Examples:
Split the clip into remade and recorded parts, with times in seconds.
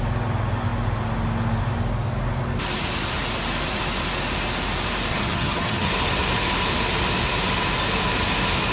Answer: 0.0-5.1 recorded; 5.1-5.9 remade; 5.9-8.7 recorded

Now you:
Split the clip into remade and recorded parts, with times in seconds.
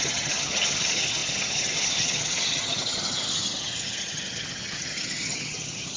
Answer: 0.0-6.0 remade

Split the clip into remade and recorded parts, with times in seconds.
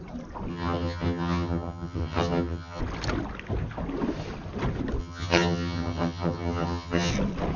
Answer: 0.0-0.5 recorded; 0.5-2.8 remade; 2.8-5.0 recorded; 5.0-7.1 remade; 7.1-7.6 recorded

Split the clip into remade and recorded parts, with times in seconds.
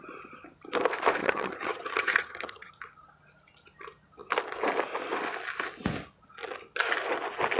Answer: 0.0-1.2 recorded; 1.2-2.7 remade; 2.7-7.6 recorded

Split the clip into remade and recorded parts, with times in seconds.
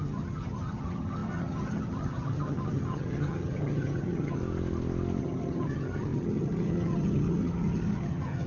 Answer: 0.0-4.4 remade; 4.4-5.2 recorded; 5.2-8.5 remade